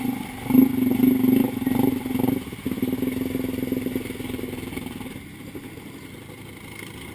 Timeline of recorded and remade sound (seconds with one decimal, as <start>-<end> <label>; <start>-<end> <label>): 0.0-7.1 recorded